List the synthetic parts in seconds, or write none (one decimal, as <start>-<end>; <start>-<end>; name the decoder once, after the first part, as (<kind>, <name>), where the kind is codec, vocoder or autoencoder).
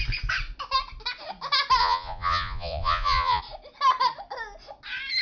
1.8-3.4 (vocoder, Vocos)